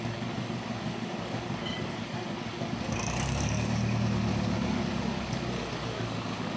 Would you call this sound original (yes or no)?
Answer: no